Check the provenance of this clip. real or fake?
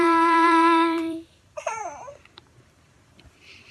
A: fake